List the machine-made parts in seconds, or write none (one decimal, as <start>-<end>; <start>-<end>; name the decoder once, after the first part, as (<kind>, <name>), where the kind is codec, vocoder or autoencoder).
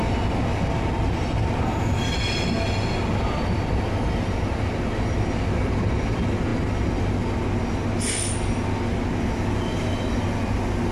none